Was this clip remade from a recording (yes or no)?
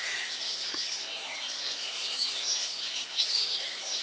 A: yes